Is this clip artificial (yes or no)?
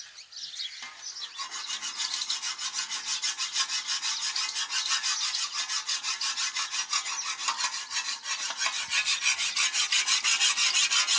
no